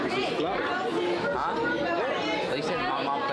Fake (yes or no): no